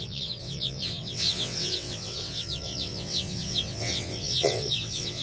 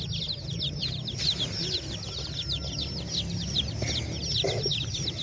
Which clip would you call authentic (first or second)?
second